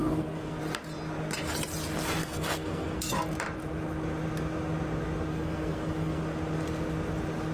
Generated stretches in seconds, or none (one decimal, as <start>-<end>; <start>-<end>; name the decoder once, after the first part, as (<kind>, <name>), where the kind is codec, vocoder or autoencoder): 0.0-0.6 (codec, SNAC); 2.2-3.1; 5.3-6.2